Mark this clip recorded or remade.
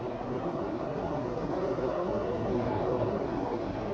remade